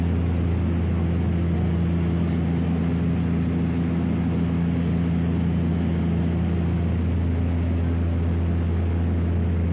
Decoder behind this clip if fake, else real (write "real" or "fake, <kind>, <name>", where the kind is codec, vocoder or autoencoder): real